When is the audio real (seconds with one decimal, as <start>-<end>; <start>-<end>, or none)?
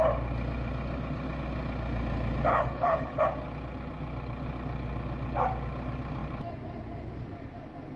0.0-2.5; 3.2-8.0